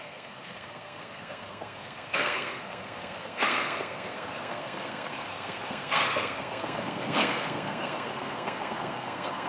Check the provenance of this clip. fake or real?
fake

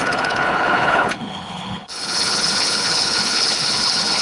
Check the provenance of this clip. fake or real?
fake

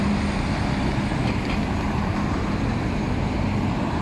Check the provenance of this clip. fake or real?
real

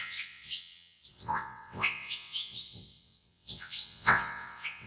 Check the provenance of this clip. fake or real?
fake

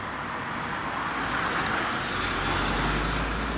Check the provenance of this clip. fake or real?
real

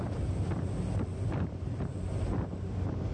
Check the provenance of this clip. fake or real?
real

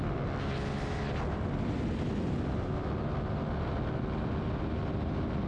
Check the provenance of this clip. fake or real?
real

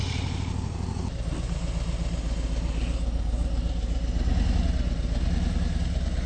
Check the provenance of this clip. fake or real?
real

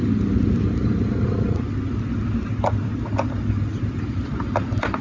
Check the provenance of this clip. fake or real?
real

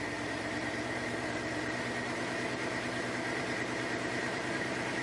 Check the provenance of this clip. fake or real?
fake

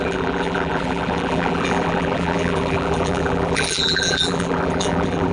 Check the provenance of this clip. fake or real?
fake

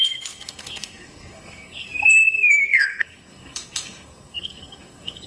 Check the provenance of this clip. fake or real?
fake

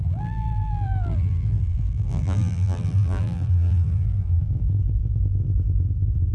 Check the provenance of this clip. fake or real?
fake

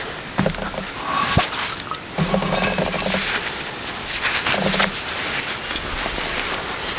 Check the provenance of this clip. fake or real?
real